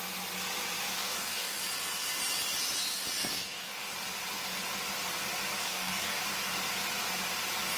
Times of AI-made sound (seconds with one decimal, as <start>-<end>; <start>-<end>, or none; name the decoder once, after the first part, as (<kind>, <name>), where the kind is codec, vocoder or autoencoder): 0.9-1.6 (codec, DAC); 3.3-3.9; 5.6-6.2